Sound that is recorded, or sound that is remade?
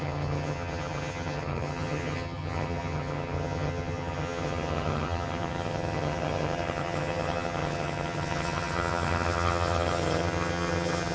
remade